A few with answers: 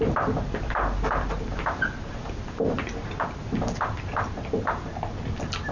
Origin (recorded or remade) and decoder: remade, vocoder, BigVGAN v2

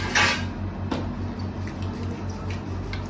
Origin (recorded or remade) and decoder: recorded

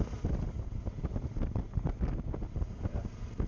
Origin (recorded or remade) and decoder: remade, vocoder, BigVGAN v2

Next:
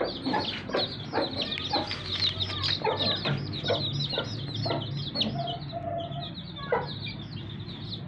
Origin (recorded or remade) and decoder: recorded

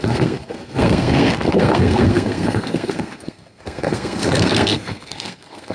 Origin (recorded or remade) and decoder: remade, codec, SNAC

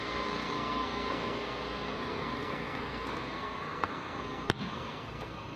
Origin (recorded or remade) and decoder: remade, codec, SNAC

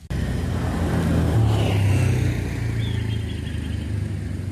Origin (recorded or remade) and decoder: recorded